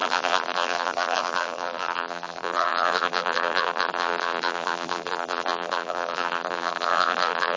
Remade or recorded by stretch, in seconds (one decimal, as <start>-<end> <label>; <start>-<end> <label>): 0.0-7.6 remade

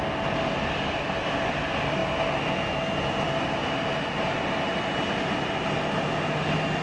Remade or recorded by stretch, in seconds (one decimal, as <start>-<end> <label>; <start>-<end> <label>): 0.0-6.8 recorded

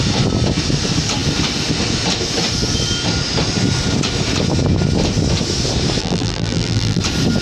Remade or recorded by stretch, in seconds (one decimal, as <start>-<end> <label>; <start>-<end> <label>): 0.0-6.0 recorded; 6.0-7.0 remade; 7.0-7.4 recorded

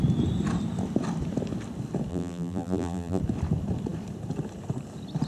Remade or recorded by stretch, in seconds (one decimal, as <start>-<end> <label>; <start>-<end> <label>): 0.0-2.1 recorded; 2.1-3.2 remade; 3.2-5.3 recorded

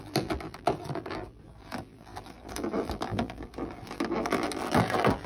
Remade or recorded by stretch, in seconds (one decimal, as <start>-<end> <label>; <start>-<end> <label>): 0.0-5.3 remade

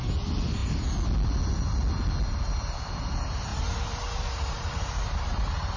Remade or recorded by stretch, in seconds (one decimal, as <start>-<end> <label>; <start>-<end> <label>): 0.0-3.5 recorded; 3.5-5.8 remade

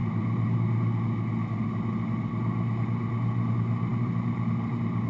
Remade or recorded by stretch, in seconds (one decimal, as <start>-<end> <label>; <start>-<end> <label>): 0.0-0.6 remade; 0.6-3.9 recorded; 3.9-5.1 remade

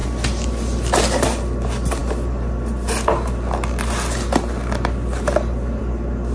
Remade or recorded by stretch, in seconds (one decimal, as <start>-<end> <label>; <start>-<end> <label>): 0.0-6.3 recorded